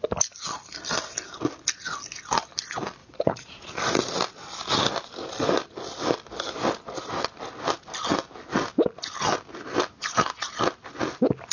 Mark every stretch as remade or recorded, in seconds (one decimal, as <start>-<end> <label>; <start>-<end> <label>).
0.0-3.0 recorded; 3.0-3.5 remade; 3.5-11.5 recorded